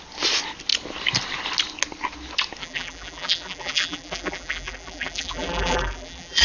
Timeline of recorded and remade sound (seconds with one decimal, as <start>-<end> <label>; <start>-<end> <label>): 0.0-2.6 recorded; 2.6-6.4 remade